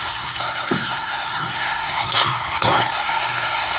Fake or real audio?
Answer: fake